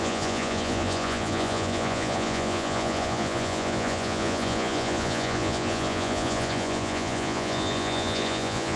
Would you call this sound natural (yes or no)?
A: no